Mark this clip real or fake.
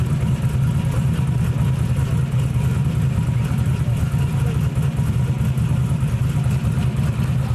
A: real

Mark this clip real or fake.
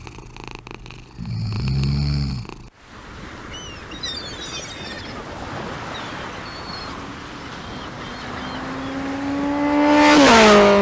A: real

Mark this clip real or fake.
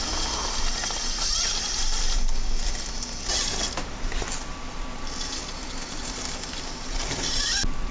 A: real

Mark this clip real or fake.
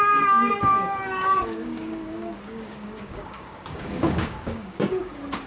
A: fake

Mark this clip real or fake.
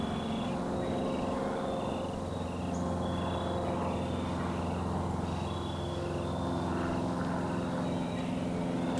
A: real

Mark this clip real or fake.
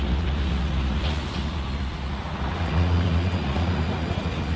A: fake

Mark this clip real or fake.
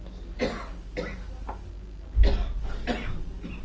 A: real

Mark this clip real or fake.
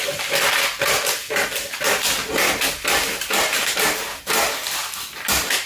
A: real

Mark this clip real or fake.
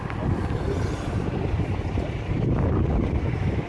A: real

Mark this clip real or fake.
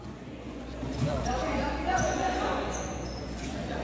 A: fake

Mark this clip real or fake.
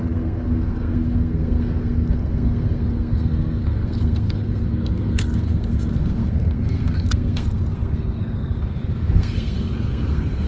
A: fake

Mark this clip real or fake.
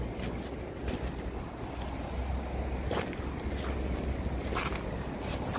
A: real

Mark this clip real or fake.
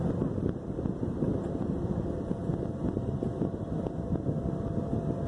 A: fake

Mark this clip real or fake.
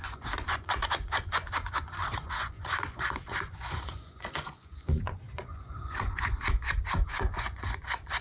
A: fake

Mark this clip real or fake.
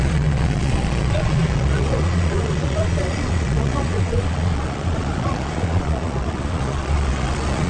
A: fake